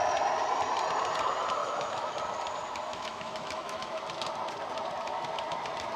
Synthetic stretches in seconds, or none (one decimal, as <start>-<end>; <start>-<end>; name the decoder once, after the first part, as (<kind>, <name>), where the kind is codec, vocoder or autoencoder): 1.6-2.1 (autoencoder, DAC-VAE); 2.9-4.0